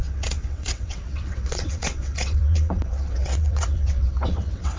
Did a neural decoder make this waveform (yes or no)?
yes